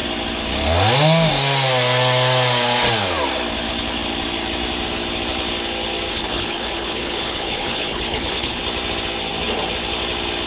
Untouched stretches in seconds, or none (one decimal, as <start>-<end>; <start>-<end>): 0.0-6.1; 8.6-10.5